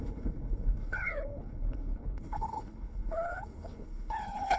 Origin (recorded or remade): remade